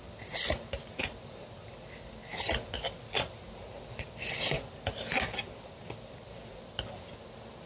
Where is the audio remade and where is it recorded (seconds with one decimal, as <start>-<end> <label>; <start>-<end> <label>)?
0.0-7.7 recorded